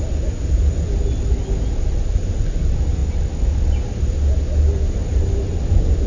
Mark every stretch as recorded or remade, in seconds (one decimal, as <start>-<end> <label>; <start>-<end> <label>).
0.0-6.1 recorded